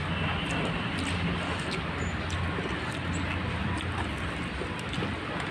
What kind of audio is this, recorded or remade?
recorded